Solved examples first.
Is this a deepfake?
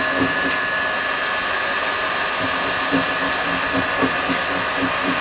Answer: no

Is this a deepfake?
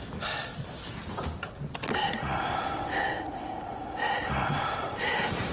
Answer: no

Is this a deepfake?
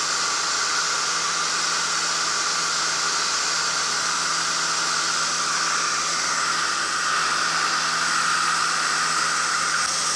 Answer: no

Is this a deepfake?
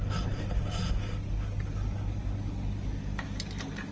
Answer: no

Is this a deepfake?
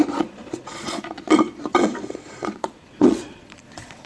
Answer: yes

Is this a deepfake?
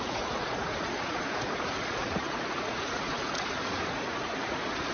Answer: yes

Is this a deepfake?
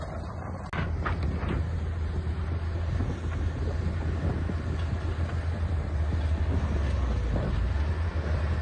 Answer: no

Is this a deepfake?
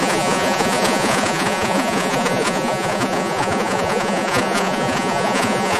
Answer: yes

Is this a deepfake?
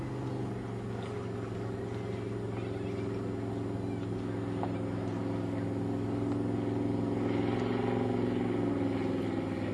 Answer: no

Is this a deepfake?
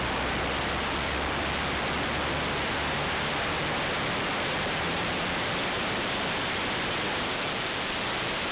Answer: no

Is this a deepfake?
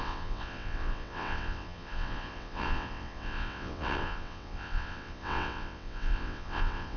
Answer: yes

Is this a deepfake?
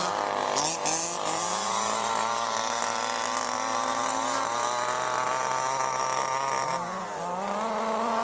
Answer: no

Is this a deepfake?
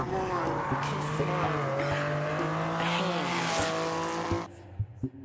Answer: no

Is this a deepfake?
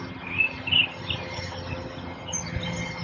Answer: no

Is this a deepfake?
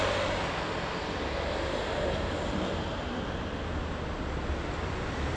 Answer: no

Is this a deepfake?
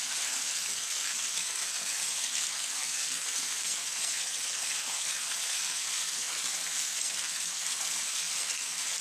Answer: yes